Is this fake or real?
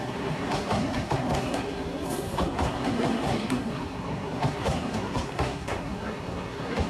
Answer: fake